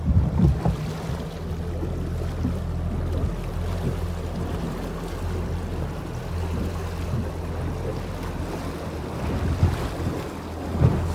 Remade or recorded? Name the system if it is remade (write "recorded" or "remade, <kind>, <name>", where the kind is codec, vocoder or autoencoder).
recorded